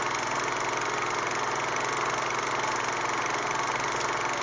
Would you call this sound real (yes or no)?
yes